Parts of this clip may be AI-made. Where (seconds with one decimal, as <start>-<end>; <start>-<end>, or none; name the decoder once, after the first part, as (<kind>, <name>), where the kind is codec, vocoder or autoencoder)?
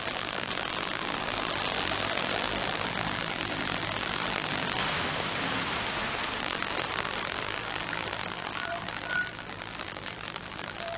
0.0-4.8 (vocoder, BigVGAN v2); 6.4-11.0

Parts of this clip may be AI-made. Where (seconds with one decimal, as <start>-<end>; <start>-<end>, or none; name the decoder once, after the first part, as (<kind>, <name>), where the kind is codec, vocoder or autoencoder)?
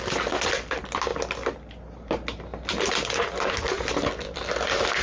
0.0-1.1 (vocoder, BigVGAN v2); 4.1-5.0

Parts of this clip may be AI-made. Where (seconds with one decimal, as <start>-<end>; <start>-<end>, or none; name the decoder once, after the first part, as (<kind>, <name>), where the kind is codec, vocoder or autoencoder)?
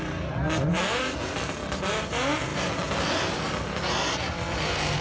none